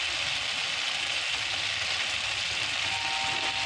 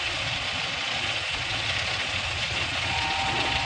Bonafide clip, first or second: first